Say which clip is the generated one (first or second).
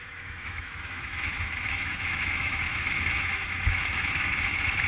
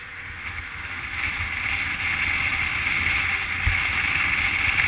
first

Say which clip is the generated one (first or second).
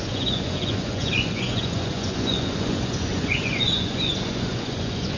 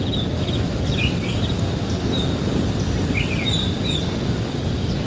first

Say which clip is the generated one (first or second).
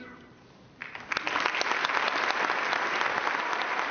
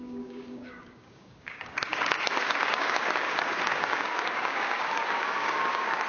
second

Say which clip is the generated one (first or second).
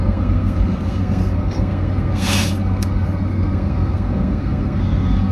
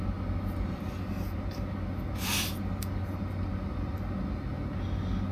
first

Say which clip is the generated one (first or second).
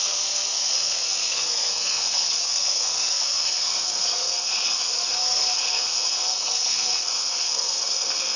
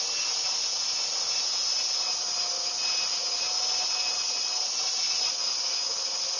first